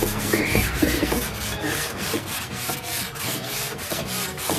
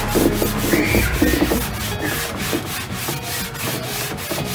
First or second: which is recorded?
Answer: second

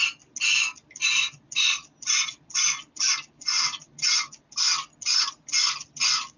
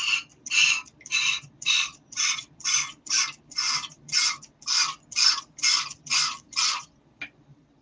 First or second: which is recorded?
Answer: first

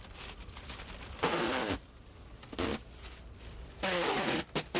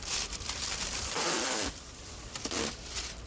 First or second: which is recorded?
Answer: first